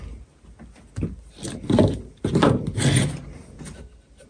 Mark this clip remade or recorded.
recorded